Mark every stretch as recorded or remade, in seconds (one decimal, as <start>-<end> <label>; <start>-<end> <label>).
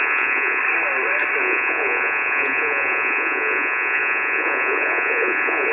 0.0-0.6 remade; 0.6-1.4 recorded; 1.4-5.7 remade